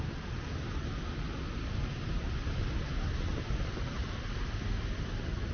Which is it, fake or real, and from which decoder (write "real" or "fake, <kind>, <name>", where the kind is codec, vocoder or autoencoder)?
real